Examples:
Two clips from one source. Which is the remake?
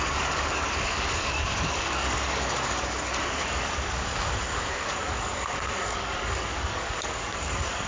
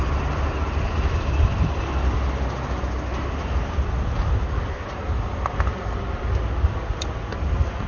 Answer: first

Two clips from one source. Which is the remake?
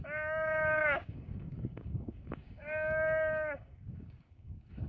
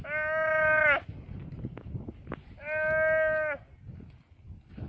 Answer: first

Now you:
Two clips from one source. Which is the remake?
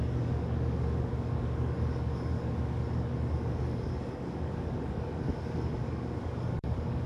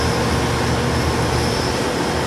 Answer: first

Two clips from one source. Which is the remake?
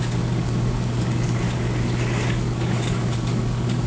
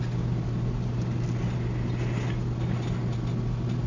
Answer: first